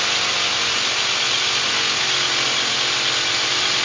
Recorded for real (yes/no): yes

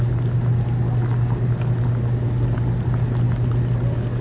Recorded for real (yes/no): yes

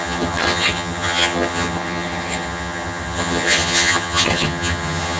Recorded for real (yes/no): no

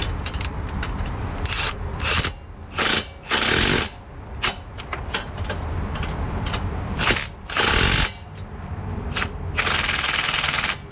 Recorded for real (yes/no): yes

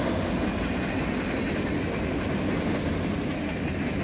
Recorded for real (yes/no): yes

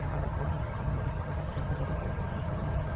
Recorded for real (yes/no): no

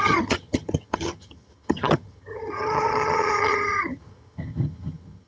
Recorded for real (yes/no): no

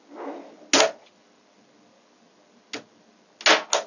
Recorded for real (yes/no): yes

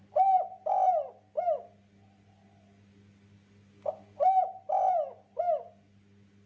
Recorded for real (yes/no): yes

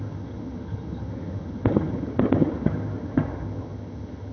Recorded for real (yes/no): no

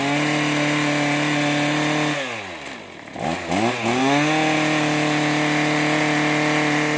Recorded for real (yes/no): yes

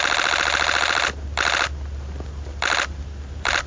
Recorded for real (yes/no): yes